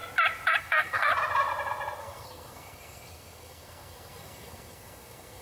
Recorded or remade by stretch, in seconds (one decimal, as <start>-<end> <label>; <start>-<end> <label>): 0.0-0.6 recorded; 0.6-1.1 remade; 1.1-2.0 recorded; 2.0-5.4 remade